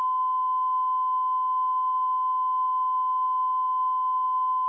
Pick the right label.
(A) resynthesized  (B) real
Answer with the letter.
B